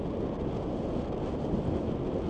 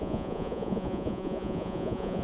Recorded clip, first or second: first